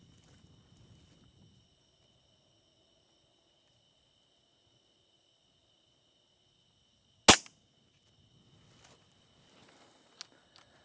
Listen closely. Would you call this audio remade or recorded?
recorded